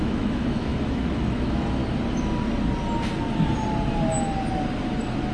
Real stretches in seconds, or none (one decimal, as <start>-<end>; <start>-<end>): 1.8-5.3